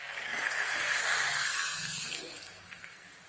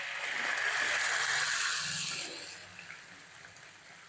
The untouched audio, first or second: second